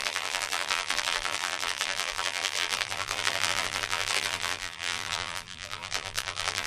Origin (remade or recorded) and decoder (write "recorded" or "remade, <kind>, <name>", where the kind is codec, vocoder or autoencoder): remade, vocoder, BigVGAN v2